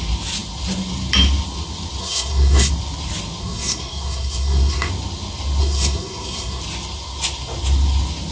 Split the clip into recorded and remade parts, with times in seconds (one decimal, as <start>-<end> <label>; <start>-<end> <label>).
0.0-2.0 recorded; 2.0-2.7 remade; 2.7-3.4 recorded; 3.4-4.9 remade; 4.9-5.6 recorded; 5.6-6.6 remade; 6.6-8.3 recorded